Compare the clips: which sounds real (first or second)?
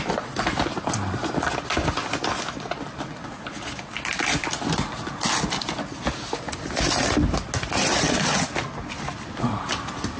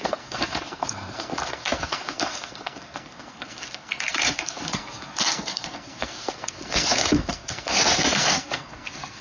first